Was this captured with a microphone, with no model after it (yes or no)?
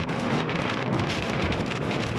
no